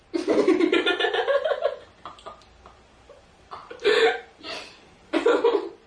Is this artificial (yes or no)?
no